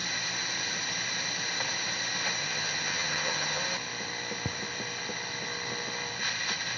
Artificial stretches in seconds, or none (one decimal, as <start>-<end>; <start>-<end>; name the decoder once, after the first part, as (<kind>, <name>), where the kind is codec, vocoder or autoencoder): 2.4-3.6 (vocoder, HiFi-GAN)